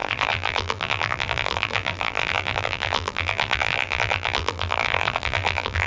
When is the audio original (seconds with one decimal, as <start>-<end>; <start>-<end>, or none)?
none